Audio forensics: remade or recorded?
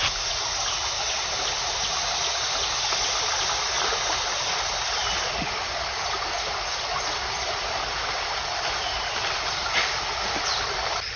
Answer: recorded